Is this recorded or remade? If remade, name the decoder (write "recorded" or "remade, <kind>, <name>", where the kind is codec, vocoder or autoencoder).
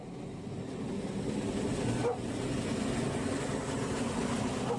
recorded